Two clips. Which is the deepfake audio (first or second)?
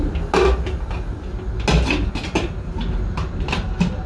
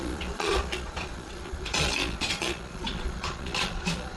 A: second